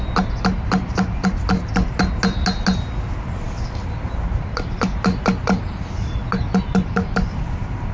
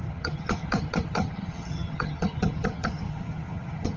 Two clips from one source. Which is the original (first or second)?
first